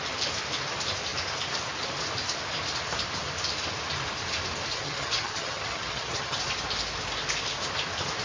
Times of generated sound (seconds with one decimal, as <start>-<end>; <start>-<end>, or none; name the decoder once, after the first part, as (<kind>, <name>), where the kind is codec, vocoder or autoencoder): 4.7-6.4 (vocoder, HiFi-GAN)